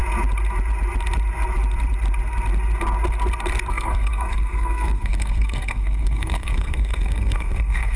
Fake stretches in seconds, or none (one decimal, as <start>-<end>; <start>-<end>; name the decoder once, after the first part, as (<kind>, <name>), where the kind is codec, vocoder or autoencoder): 3.7-8.0 (codec, SNAC)